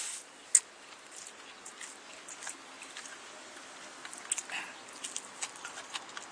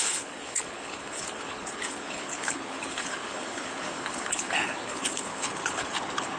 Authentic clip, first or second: first